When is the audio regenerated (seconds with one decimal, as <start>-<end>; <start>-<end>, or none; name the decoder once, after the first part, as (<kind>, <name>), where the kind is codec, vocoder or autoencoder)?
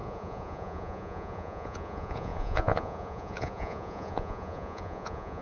0.0-5.4 (vocoder, Vocos)